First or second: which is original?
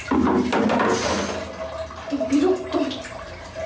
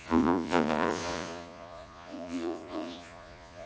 first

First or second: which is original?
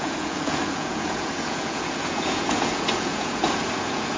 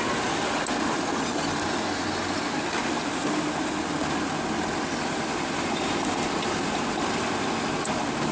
second